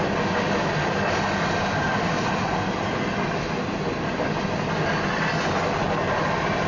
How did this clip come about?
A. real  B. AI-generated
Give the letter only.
A